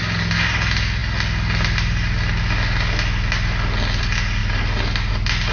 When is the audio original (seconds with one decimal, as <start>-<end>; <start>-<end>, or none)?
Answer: 0.0-5.5

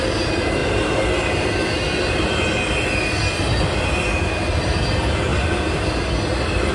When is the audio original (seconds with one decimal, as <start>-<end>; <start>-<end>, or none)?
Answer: 0.0-6.7

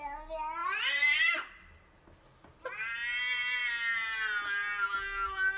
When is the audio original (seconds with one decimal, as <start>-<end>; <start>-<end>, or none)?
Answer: 0.0-0.6; 1.1-5.6

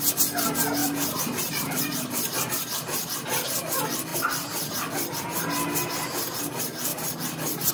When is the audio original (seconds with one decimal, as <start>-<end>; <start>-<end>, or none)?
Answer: 0.0-0.8; 2.5-4.1; 5.2-6.9